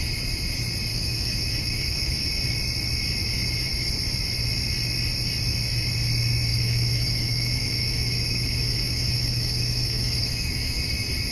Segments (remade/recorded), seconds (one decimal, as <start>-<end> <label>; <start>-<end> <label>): 0.0-0.9 recorded; 0.9-2.3 remade; 2.3-6.5 recorded; 6.5-10.8 remade; 10.8-11.3 recorded